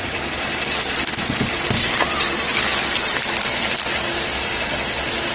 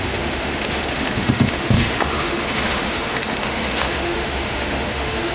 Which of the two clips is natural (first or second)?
first